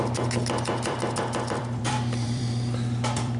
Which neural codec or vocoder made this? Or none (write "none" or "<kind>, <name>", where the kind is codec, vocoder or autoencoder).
vocoder, BigVGAN v2